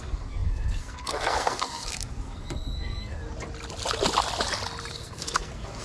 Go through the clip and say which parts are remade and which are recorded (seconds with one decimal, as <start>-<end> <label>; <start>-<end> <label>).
0.0-3.2 remade; 3.2-4.9 recorded; 4.9-5.8 remade